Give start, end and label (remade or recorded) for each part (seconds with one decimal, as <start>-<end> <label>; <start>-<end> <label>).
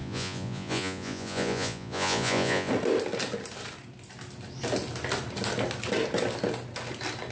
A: 0.0-2.7 remade; 2.7-7.3 recorded